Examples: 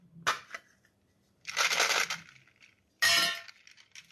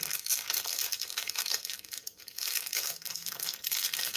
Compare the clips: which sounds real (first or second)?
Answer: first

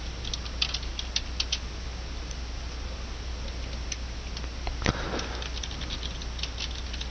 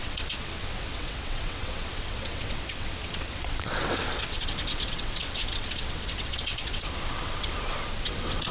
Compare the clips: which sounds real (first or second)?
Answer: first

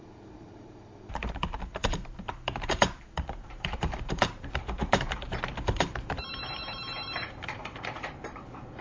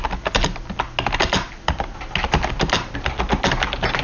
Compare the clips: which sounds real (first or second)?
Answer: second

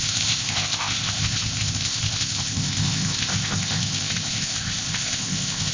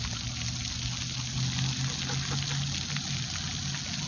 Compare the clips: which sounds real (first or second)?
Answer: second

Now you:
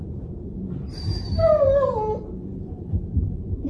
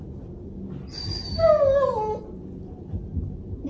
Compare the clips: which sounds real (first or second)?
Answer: second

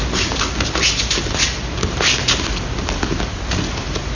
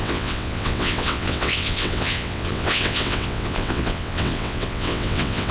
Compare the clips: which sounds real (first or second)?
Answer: first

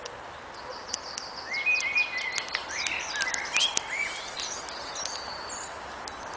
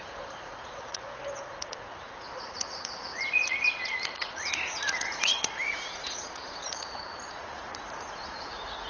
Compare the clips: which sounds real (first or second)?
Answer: first